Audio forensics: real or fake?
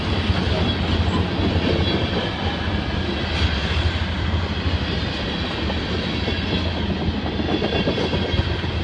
real